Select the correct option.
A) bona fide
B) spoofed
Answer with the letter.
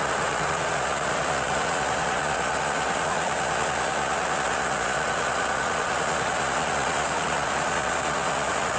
B